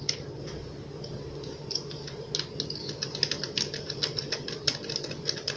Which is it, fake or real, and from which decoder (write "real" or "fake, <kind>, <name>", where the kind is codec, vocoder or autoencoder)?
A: real